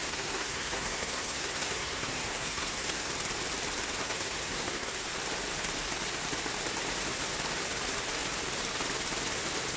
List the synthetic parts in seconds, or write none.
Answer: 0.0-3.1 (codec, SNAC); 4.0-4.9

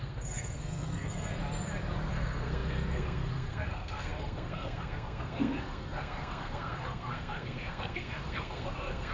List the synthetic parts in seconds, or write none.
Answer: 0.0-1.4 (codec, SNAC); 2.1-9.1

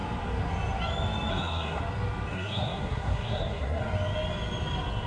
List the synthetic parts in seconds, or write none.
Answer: 1.3-1.8 (codec, SNAC); 2.3-3.8

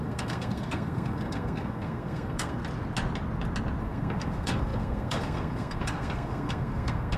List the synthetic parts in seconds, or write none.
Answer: 0.0-2.6 (codec, SNAC); 3.8-7.2

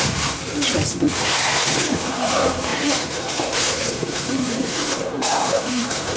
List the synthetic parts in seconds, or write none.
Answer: 0.0-0.4 (codec, SNAC); 0.9-6.2